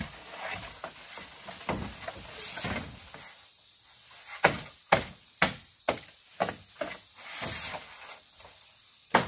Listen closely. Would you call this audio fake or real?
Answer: real